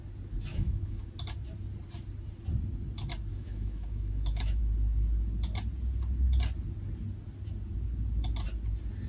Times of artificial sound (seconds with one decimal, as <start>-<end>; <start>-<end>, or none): 0.5-1.1; 3.3-4.6